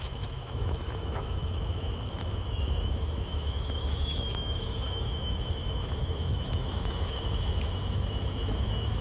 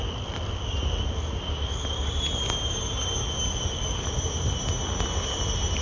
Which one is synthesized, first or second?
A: first